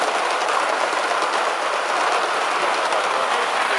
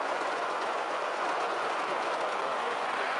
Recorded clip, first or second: first